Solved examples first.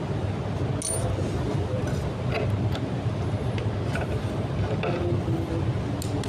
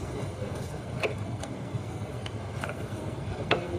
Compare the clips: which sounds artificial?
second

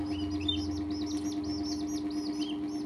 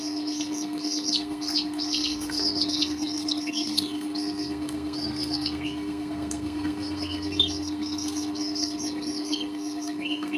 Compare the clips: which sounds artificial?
second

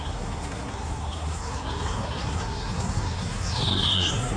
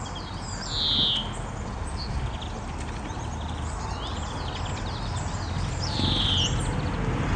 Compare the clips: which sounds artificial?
first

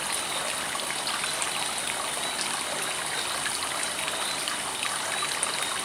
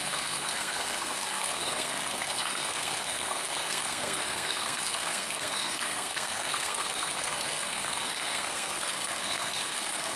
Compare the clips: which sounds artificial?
second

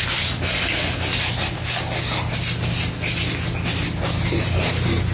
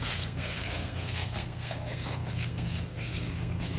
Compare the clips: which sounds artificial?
second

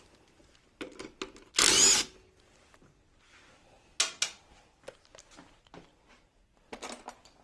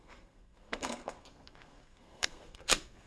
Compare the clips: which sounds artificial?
second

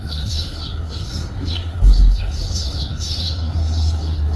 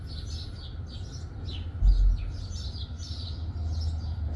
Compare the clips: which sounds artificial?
first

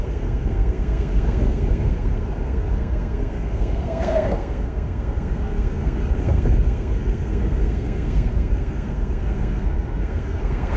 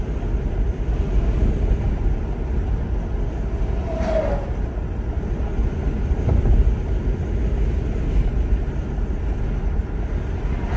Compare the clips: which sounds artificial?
first